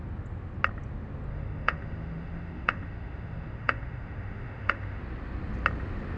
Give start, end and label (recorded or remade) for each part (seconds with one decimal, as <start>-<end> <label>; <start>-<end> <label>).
0.0-1.3 recorded; 1.3-5.0 remade; 5.0-6.2 recorded